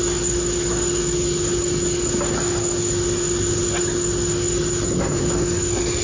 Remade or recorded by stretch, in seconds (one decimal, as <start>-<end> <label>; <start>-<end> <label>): 0.0-6.0 recorded